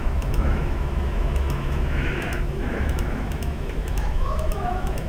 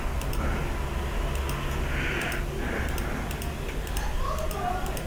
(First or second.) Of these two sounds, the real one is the second